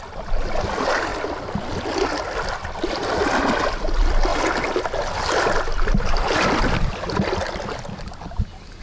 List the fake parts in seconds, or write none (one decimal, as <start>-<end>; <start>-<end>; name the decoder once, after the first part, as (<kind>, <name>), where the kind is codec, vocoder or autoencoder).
none